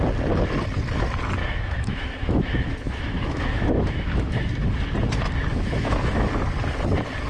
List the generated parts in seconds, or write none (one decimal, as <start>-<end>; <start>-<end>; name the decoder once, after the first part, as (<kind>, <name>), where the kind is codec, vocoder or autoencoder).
1.4-4.5 (autoencoder, DAC-VAE); 5.5-6.3